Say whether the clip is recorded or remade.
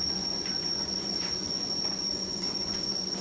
remade